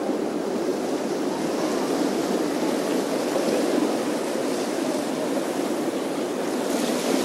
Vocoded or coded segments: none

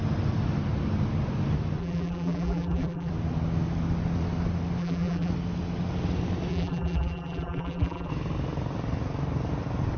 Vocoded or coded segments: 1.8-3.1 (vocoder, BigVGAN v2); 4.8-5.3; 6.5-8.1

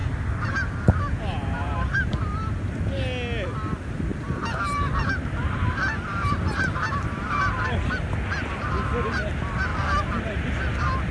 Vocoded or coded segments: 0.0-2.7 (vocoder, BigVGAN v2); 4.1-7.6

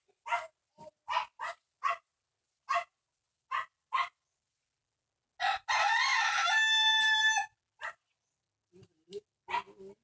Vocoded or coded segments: 6.1-7.2 (vocoder, BigVGAN v2)

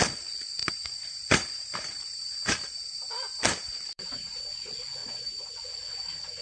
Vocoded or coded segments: 0.6-4.4 (vocoder, BigVGAN v2); 5.0-5.5

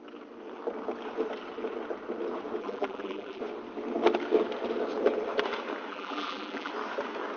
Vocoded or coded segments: 2.6-3.4 (vocoder, BigVGAN v2); 5.9-6.7

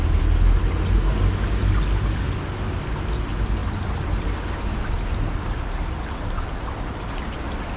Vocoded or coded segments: none